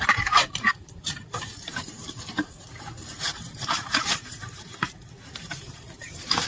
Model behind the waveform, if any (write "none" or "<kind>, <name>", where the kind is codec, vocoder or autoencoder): vocoder, BigVGAN v2